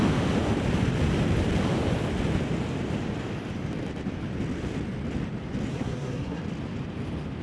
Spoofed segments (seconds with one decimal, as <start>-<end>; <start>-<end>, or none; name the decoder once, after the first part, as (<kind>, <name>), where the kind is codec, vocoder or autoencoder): 5.7-6.4 (codec, SNAC)